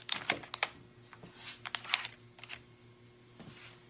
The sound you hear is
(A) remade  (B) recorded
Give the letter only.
B